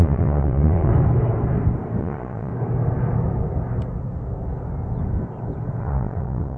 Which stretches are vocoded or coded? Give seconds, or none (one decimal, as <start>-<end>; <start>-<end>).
0.0-0.9; 2.0-2.5; 5.8-6.6